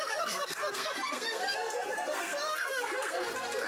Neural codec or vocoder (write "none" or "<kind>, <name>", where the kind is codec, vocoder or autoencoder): codec, SNAC